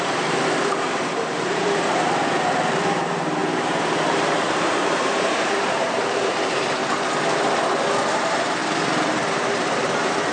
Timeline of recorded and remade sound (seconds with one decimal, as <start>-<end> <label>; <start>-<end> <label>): 0.0-6.8 remade; 6.8-8.1 recorded; 8.1-8.6 remade; 8.6-9.3 recorded; 9.3-10.3 remade